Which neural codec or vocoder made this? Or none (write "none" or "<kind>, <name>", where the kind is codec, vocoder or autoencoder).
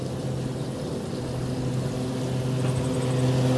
none